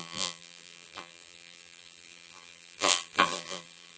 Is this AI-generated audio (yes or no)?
yes